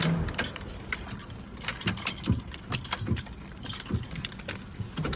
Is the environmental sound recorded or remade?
recorded